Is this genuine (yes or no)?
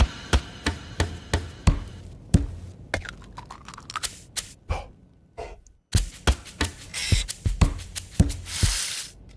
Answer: yes